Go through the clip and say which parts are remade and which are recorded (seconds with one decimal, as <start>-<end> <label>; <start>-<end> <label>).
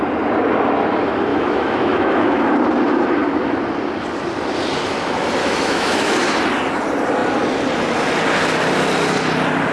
0.0-1.3 recorded; 1.3-2.5 remade; 2.5-5.4 recorded; 5.4-6.4 remade; 6.4-9.7 recorded